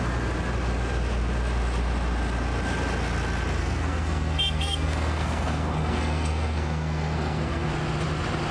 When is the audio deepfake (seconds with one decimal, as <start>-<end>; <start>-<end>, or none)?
3.6-7.7